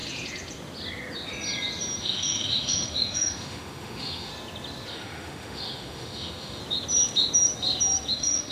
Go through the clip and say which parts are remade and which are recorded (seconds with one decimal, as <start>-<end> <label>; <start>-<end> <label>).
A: 0.0-2.0 recorded; 2.0-4.3 remade; 4.3-4.9 recorded; 4.9-6.6 remade; 6.6-8.1 recorded; 8.1-8.5 remade